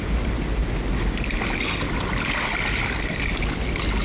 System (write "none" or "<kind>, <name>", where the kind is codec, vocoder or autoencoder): none